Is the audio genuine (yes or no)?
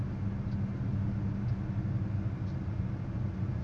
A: yes